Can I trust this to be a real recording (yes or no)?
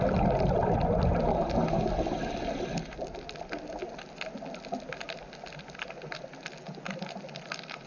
yes